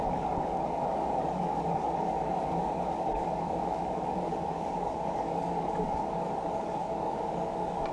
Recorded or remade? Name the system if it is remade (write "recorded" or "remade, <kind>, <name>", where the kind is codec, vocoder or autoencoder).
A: remade, codec, DAC